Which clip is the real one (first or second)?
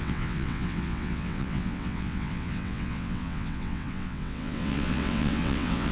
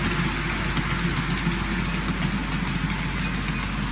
second